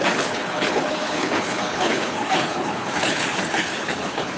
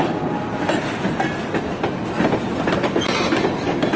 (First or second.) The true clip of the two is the second